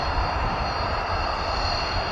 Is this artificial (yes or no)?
no